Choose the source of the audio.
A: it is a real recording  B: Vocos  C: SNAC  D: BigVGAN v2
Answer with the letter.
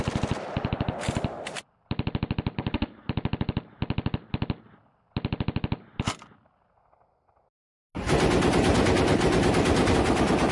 A